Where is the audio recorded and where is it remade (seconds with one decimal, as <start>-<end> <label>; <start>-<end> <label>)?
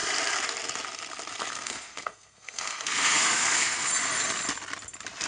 0.0-1.5 recorded; 1.5-3.9 remade; 3.9-5.3 recorded